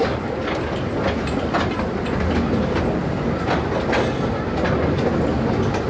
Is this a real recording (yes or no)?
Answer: yes